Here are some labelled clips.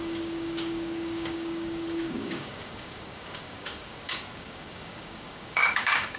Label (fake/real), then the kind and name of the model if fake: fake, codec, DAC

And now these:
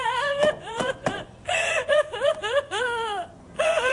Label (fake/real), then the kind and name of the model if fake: fake, vocoder, Vocos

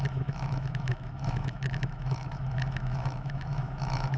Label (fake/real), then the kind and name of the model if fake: fake, autoencoder, DAC-VAE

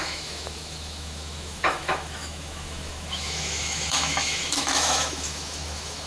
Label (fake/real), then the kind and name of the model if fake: fake, autoencoder, DAC-VAE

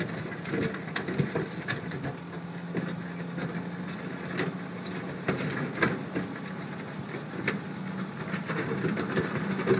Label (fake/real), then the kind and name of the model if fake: real